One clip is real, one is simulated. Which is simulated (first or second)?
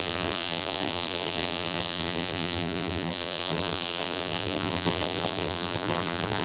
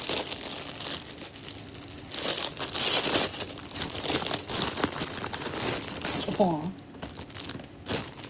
first